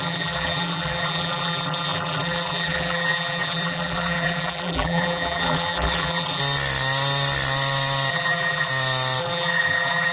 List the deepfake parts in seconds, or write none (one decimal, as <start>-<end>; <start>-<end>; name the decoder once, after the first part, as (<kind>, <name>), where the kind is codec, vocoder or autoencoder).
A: 0.0-6.4 (vocoder, BigVGAN v2); 8.1-8.7; 9.2-10.1